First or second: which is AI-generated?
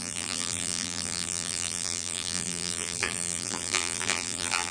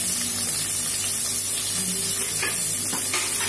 first